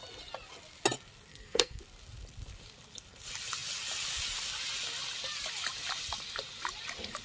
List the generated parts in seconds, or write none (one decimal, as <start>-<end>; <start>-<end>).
1.3-1.8